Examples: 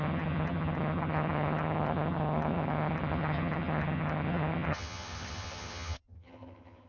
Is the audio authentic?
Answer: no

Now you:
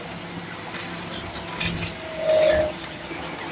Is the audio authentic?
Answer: yes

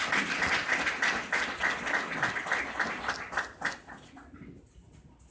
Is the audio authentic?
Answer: yes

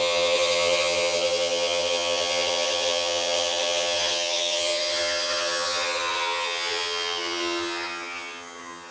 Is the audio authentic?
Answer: no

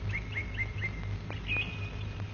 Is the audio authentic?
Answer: yes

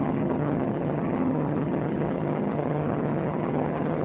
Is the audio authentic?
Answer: no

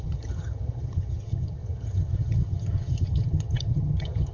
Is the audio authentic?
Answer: no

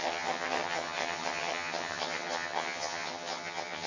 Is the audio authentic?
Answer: no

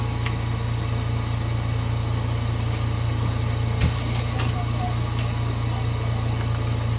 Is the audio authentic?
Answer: yes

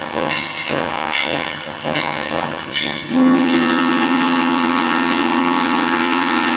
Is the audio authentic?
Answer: no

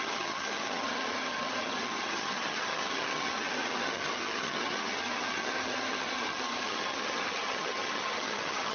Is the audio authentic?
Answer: no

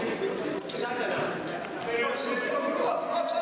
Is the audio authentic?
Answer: yes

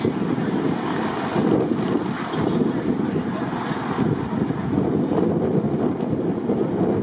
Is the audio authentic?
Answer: yes